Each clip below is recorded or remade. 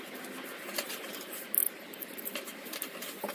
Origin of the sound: recorded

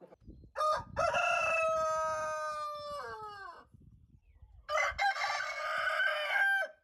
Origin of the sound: recorded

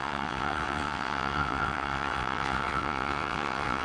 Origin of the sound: remade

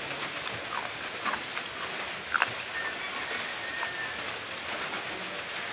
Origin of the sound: recorded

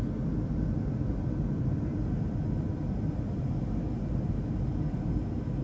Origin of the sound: recorded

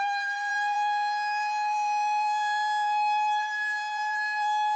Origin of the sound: remade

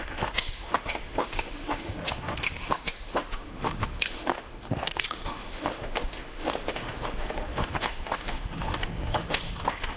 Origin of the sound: remade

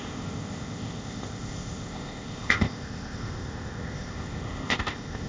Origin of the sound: remade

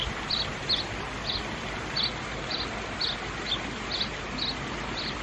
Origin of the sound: recorded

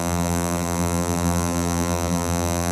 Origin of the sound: remade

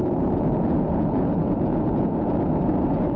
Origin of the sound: remade